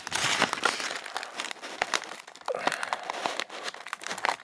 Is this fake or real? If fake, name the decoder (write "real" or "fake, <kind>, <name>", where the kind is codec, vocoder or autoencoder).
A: real